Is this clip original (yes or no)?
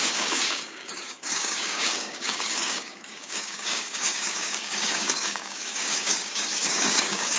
no